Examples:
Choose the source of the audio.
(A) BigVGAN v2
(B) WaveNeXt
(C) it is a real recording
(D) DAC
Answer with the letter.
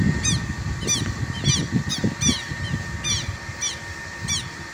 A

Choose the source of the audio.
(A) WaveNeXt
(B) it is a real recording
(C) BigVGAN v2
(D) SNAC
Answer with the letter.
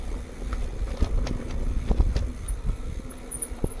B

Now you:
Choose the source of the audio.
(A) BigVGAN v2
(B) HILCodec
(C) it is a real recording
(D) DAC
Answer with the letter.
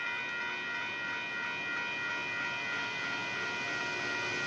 C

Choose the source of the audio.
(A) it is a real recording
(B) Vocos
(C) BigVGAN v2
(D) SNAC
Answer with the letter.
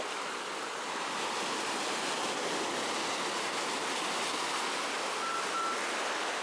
A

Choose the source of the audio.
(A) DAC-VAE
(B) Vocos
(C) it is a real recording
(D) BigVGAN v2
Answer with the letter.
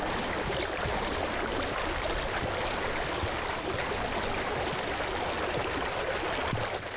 C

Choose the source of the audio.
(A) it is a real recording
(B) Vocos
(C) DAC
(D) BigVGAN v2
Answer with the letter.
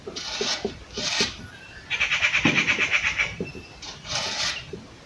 D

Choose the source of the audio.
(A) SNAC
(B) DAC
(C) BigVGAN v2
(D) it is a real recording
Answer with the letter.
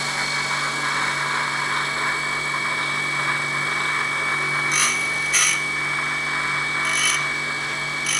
D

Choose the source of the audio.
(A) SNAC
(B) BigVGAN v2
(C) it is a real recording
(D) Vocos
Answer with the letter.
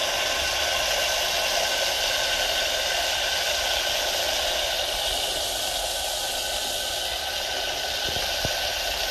C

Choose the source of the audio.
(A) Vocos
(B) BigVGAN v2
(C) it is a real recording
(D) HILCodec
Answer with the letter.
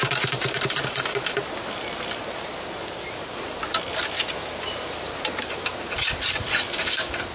B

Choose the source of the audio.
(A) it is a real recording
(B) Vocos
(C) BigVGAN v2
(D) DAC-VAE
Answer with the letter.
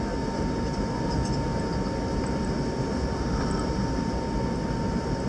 A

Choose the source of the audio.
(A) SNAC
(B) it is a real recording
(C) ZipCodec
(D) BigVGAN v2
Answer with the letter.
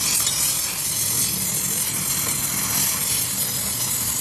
B